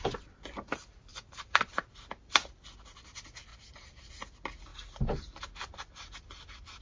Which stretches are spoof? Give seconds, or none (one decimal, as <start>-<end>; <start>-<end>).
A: 1.1-1.9; 3.5-4.1